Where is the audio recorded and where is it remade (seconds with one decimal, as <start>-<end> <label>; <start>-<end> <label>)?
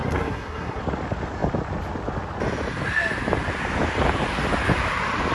0.0-0.8 remade; 0.8-5.3 recorded